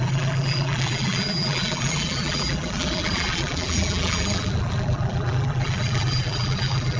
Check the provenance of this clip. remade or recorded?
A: remade